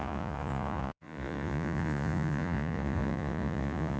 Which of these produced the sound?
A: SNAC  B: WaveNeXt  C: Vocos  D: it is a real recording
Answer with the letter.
C